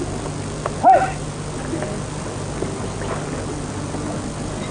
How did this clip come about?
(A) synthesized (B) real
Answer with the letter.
B